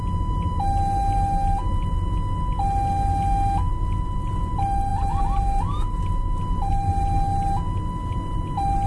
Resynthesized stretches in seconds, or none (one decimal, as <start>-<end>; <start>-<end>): none